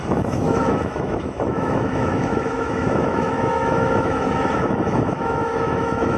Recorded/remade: remade